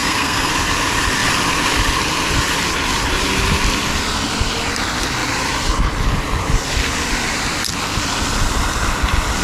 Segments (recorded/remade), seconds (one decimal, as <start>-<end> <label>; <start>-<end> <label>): 0.0-0.5 remade; 0.5-9.4 recorded

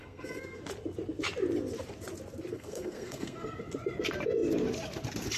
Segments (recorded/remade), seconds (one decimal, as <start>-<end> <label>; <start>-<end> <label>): 0.0-0.6 remade; 0.6-2.5 recorded; 2.5-3.6 remade; 3.6-5.4 recorded

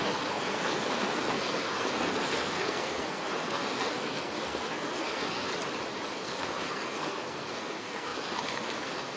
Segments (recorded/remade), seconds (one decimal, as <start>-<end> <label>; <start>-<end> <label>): 0.0-5.5 remade; 5.5-6.1 recorded; 6.1-9.2 remade